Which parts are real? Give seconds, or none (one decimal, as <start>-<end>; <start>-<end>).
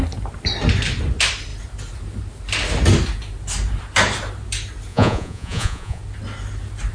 0.0-4.9; 6.0-6.9